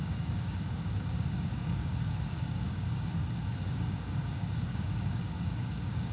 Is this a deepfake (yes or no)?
yes